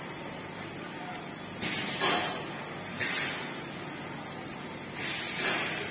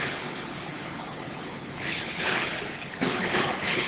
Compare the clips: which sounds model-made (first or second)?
second